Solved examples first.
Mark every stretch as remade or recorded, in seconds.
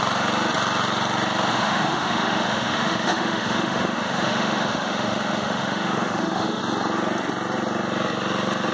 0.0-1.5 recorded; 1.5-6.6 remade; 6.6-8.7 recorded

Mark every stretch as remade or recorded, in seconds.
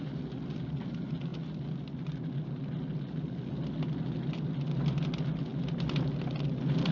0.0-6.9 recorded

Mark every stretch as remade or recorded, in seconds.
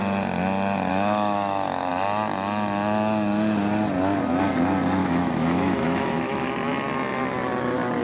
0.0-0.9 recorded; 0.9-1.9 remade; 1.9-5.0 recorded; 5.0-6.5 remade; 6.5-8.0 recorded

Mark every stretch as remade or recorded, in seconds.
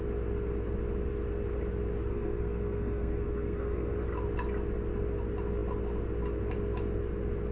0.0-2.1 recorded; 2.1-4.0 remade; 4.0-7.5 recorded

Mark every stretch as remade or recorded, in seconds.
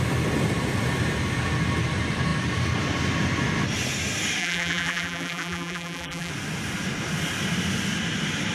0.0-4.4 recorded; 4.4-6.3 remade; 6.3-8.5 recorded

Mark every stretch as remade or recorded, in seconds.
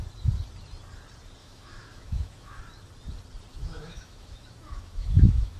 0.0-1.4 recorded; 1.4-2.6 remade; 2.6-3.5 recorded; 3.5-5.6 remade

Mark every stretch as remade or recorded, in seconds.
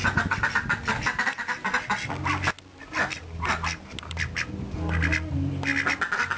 0.0-6.4 recorded